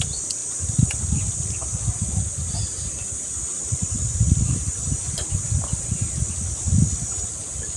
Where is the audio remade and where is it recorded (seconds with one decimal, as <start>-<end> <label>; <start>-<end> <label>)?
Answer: 0.0-0.4 recorded; 0.4-1.5 remade; 1.5-3.5 recorded; 3.5-5.8 remade; 5.8-7.8 recorded